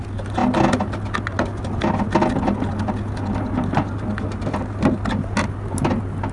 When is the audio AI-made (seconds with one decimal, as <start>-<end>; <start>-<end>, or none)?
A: none